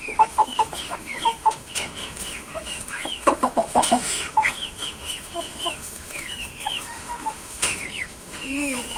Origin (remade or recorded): remade